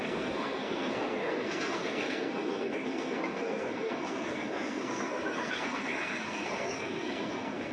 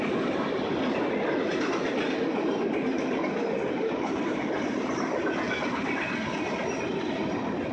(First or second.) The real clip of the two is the second